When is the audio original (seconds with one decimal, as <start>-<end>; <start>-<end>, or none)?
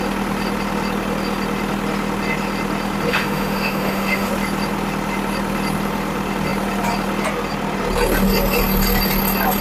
0.0-3.1; 4.3-9.6